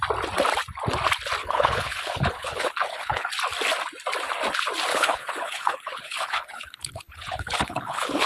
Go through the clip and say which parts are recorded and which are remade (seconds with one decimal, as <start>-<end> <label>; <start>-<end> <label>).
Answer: 0.0-1.4 recorded; 1.4-3.3 remade; 3.3-4.9 recorded; 4.9-8.3 remade